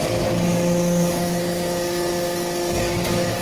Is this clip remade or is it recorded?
remade